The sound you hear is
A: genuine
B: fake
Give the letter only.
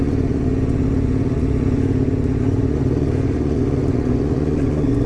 B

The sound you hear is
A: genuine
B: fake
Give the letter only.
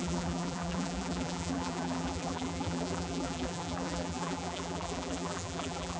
B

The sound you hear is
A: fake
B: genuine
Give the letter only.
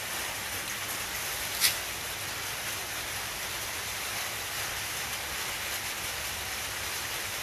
B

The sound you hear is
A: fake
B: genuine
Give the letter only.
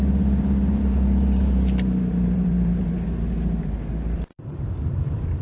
A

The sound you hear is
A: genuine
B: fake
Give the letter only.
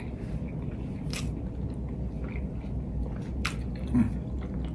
A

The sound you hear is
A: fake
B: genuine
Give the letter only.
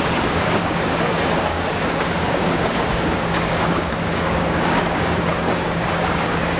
A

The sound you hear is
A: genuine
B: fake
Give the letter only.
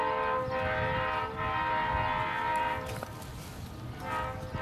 A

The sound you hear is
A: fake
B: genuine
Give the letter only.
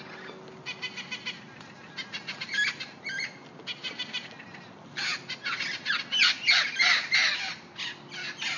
B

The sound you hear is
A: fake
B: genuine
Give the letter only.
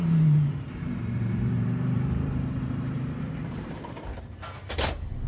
A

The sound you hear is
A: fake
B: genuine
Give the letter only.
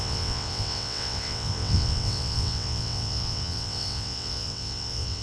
A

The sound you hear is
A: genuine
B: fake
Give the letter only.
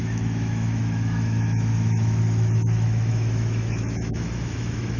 B